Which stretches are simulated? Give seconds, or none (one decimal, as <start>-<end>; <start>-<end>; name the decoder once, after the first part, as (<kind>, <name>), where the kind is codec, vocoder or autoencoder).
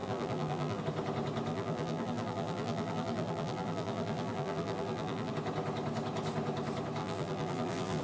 0.0-0.8 (vocoder, BigVGAN v2); 1.5-5.3; 7.0-8.0